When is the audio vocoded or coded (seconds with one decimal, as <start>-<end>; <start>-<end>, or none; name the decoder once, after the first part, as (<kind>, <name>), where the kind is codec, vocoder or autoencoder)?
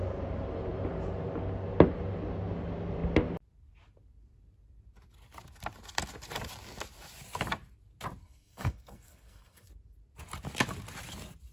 8.2-9.7 (codec, SNAC)